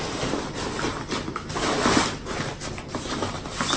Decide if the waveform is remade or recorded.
recorded